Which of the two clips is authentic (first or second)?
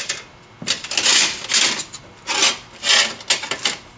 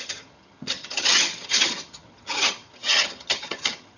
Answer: first